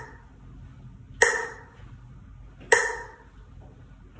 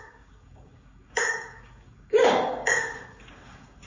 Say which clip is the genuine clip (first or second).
first